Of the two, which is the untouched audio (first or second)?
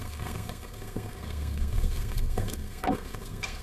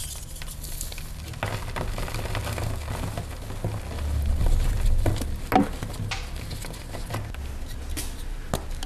second